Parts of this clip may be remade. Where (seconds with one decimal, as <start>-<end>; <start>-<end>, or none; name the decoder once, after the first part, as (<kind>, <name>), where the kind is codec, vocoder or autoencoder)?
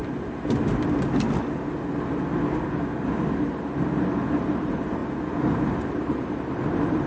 4.3-5.0 (vocoder, BigVGAN v2); 5.7-7.1